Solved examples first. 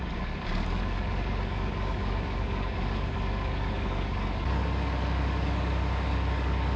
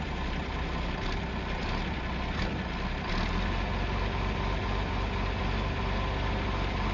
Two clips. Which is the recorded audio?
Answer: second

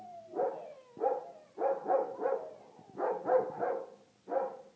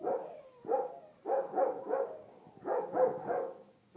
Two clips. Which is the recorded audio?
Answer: first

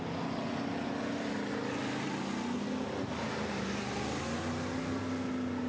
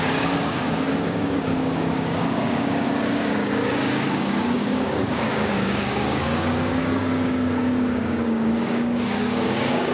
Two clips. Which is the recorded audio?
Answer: first